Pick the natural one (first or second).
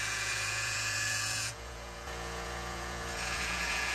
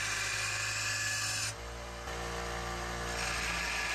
second